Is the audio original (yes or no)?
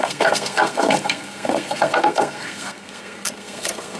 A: no